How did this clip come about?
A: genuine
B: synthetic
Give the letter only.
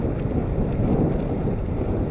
A